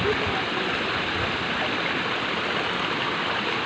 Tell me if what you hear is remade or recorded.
recorded